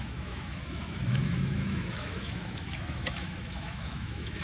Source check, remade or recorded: remade